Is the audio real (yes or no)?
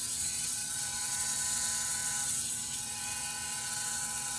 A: no